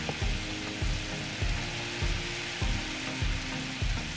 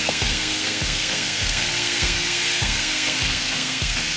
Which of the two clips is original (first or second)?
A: first